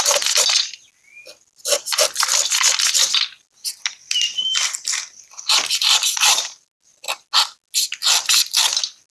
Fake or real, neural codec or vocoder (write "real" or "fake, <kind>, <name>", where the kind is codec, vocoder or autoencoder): real